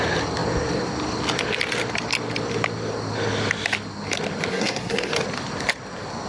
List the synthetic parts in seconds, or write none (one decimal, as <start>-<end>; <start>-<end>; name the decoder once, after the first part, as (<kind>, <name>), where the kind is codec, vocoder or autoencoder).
4.5-5.1 (codec, SNAC)